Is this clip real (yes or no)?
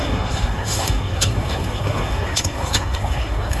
no